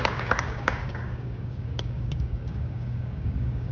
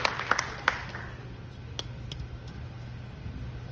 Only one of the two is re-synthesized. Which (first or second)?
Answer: first